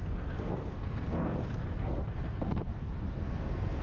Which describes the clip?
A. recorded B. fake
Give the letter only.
B